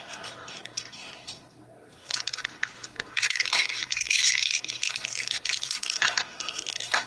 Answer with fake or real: fake